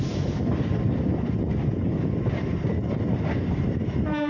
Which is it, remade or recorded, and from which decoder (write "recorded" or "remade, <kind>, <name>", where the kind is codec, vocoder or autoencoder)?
recorded